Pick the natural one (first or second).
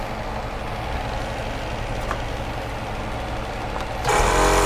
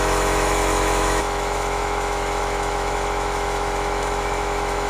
first